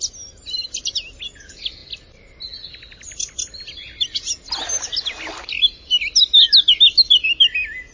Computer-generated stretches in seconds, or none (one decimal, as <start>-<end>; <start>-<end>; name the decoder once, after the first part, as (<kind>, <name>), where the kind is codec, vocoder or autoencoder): none